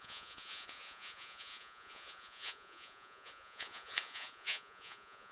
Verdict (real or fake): fake